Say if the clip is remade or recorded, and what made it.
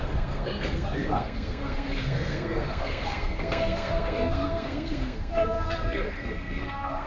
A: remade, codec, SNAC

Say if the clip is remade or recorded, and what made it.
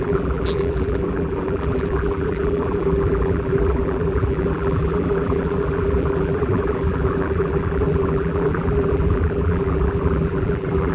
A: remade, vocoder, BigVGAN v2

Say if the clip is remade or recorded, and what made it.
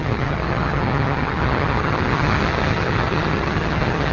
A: remade, vocoder, HiFi-GAN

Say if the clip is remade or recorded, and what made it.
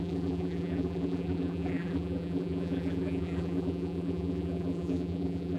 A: remade, vocoder, BigVGAN v2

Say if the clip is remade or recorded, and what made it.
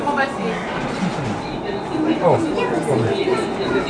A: recorded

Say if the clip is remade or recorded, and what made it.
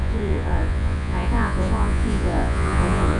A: remade, vocoder, Vocos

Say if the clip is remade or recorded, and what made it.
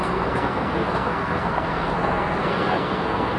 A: remade, codec, SNAC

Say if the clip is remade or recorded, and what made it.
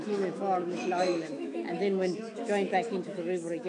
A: remade, autoencoder, DAC-VAE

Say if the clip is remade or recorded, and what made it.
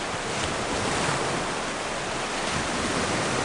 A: recorded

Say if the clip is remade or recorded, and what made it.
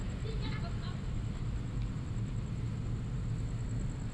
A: recorded